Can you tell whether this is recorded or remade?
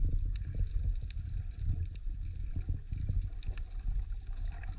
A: recorded